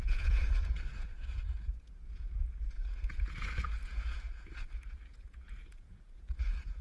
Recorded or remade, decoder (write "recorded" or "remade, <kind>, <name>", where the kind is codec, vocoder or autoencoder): remade, vocoder, Vocos